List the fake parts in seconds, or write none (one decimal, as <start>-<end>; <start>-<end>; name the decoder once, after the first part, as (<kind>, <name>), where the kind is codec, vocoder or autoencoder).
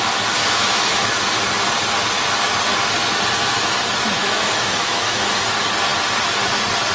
0.4-1.1 (autoencoder, DAC-VAE); 4.2-5.3